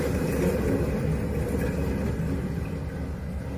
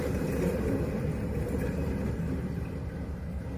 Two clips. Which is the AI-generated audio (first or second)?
second